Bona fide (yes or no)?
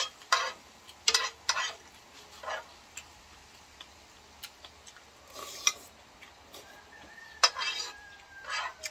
yes